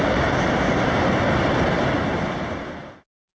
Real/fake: real